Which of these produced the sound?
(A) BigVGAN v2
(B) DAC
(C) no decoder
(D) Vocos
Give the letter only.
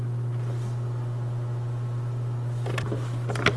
C